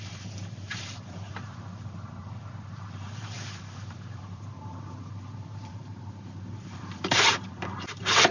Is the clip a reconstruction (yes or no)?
yes